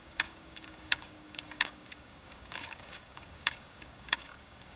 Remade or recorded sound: remade